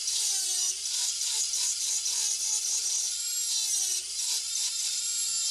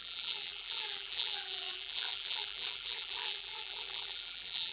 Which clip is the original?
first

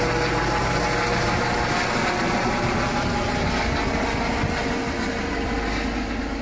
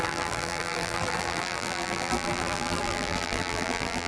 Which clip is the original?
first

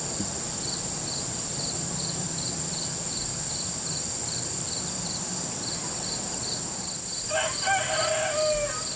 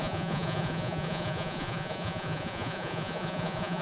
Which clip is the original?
first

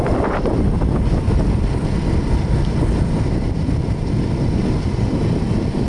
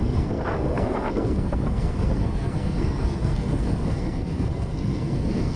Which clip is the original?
first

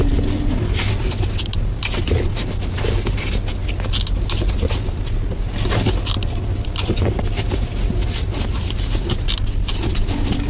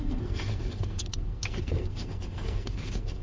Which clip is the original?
first